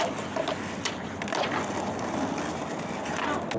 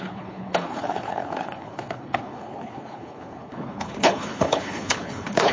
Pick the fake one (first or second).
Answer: second